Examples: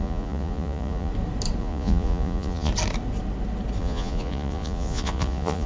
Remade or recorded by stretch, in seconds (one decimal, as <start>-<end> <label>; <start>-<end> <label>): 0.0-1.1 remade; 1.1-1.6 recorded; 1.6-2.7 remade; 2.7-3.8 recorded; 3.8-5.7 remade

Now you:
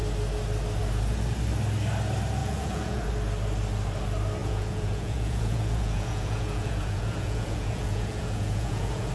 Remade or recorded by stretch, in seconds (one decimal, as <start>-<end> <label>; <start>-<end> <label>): 0.0-2.4 recorded; 2.4-3.1 remade; 3.1-4.4 recorded; 4.4-9.1 remade

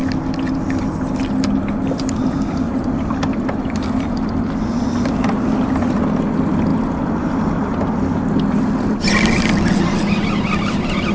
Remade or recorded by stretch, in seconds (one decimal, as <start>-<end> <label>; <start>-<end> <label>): 0.0-11.1 recorded

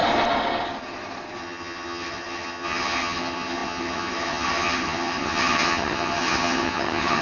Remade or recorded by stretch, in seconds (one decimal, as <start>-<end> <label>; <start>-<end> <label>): 0.0-1.4 recorded; 1.4-7.2 remade

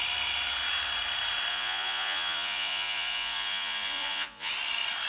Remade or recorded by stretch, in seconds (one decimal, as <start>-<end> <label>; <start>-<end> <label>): 0.0-1.5 recorded; 1.5-4.5 remade; 4.5-5.1 recorded

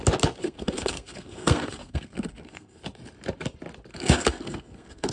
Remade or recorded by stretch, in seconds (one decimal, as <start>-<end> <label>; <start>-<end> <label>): 0.0-0.4 recorded; 0.4-2.8 remade; 2.8-3.9 recorded; 3.9-5.1 remade

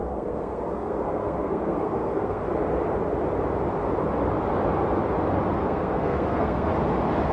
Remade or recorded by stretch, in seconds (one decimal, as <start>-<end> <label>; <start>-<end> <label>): 0.0-2.4 remade; 2.4-5.5 recorded; 5.5-6.7 remade; 6.7-7.3 recorded

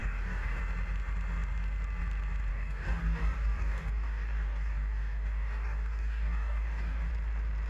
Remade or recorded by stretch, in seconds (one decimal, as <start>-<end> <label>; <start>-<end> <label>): 0.0-0.6 remade; 0.6-2.5 recorded; 2.5-7.1 remade; 7.1-7.7 recorded